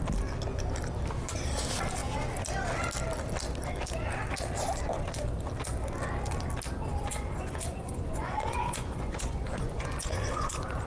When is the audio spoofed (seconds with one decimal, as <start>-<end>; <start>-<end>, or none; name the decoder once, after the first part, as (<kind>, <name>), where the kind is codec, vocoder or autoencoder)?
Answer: 6.9-10.9 (vocoder, Vocos)